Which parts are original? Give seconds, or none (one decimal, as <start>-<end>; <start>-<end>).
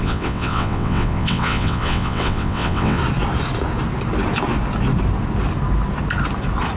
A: 3.0-6.8